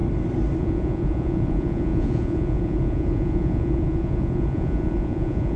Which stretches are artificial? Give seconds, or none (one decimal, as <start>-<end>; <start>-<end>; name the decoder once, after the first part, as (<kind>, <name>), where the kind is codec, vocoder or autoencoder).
0.6-5.6 (vocoder, Vocos)